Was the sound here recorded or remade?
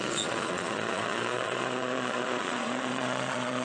remade